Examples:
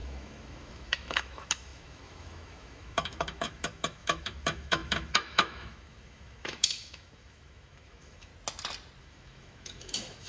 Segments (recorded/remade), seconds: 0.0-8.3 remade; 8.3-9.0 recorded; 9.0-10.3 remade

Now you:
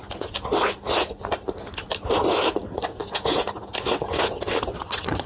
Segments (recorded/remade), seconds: 0.0-4.7 recorded; 4.7-5.3 remade

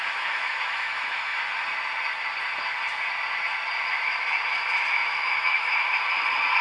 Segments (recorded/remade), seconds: 0.0-1.3 remade; 1.3-4.9 recorded; 4.9-5.8 remade; 5.8-6.6 recorded

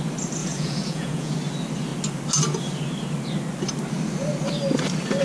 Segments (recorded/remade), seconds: 0.0-0.4 recorded; 0.4-1.3 remade; 1.3-5.2 recorded

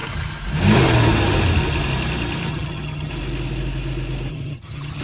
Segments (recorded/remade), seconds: 0.0-2.5 recorded; 2.5-3.1 remade; 3.1-4.3 recorded; 4.3-5.0 remade